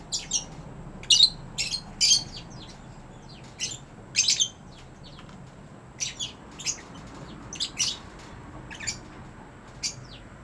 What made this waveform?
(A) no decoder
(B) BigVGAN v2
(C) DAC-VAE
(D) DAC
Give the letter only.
A